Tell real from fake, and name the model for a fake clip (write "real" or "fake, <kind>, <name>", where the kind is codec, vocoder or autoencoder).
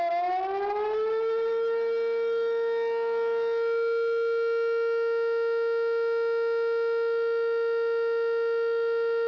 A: real